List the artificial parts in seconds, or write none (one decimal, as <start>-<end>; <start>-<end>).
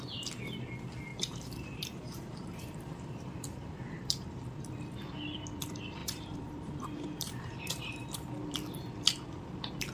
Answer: 1.1-4.3; 6.0-8.3